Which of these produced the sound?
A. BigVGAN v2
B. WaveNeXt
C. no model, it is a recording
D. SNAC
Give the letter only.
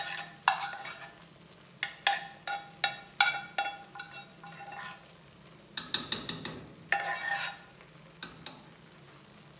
C